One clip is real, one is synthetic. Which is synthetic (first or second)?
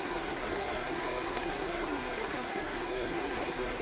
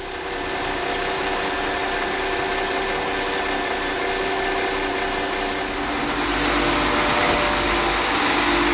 first